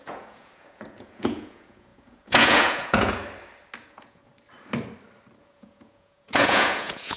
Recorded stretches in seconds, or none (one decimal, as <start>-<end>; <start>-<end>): 3.2-3.8; 4.3-5.4